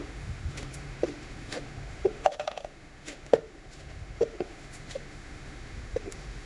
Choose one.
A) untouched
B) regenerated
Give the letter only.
B